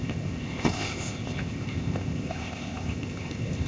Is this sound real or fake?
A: fake